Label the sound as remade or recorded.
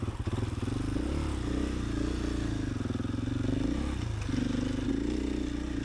recorded